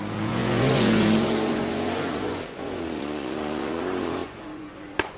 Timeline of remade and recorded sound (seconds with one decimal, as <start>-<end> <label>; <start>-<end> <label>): 0.0-5.2 remade